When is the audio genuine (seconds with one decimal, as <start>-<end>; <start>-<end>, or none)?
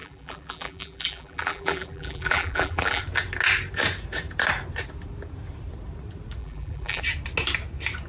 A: 3.0-6.4; 7.0-8.1